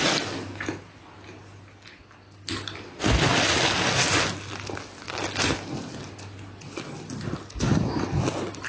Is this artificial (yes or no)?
no